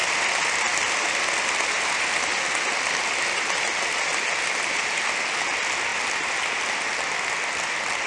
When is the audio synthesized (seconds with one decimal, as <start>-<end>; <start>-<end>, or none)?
none